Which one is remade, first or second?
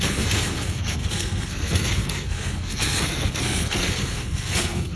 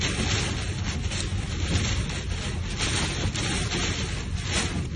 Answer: first